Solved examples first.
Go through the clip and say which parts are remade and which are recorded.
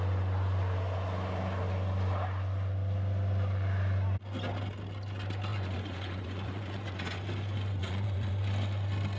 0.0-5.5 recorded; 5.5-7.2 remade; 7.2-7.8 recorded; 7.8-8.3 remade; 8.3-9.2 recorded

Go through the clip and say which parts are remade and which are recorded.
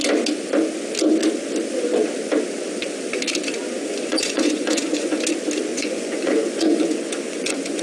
0.0-3.9 recorded; 3.9-5.2 remade; 5.2-5.7 recorded; 5.7-7.8 remade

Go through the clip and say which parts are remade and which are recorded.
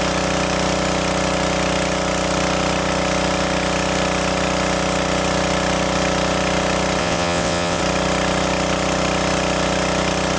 0.0-7.0 recorded; 7.0-7.8 remade; 7.8-10.4 recorded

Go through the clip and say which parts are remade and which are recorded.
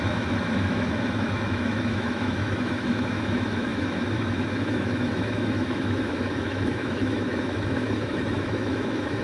0.0-9.2 remade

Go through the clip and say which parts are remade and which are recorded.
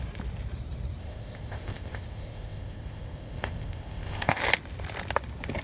0.0-1.0 recorded; 1.0-4.4 remade; 4.4-5.6 recorded